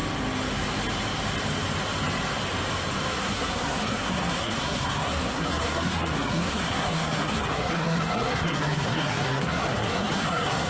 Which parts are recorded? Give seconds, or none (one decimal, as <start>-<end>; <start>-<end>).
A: 0.0-3.2